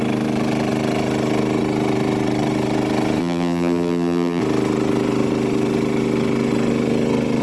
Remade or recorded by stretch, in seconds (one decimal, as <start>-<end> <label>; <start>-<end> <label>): 0.0-3.2 recorded; 3.2-4.4 remade; 4.4-7.4 recorded